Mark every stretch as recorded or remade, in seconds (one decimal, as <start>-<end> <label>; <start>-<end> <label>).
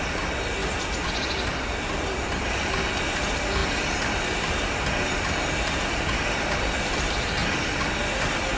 0.0-8.6 recorded